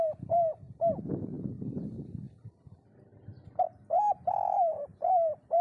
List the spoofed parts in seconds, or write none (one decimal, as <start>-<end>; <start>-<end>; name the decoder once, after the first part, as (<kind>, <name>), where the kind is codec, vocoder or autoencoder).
0.0-3.3 (vocoder, BigVGAN v2); 4.0-5.6